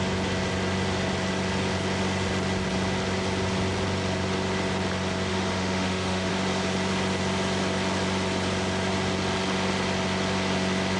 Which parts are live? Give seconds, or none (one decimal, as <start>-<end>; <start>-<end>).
0.0-5.3; 6.3-11.0